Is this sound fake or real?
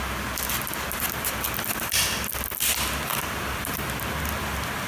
real